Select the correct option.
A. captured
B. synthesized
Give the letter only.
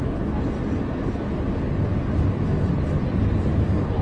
A